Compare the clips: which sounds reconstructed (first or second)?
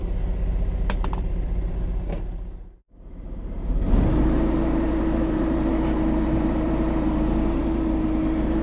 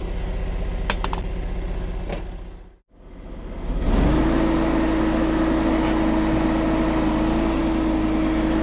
first